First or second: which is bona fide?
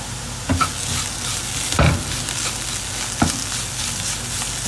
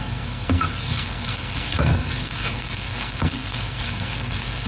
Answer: first